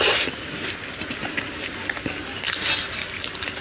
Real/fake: real